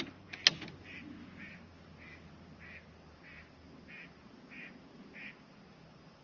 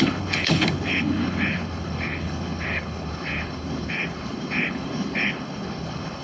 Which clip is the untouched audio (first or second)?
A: first